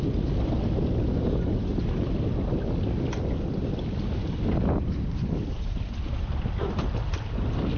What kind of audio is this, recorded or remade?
recorded